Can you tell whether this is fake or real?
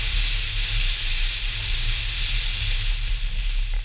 real